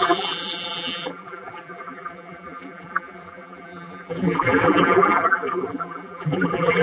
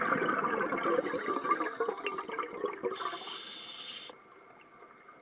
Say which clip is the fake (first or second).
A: first